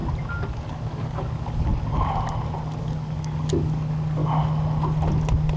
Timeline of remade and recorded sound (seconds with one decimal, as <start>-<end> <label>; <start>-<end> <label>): 0.0-0.5 recorded; 0.5-1.7 remade; 1.7-2.8 recorded; 2.8-4.2 remade; 4.2-5.6 recorded